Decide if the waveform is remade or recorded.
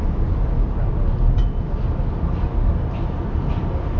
recorded